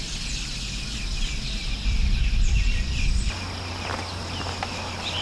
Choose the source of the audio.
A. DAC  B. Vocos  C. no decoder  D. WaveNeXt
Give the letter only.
C